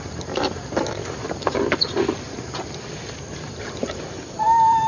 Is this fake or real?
fake